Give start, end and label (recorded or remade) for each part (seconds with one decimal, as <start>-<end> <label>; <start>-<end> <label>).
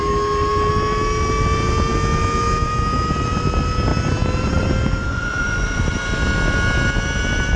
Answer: 0.0-5.1 recorded; 5.1-5.9 remade; 5.9-7.6 recorded